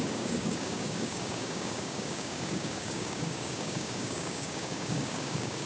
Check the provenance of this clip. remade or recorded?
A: remade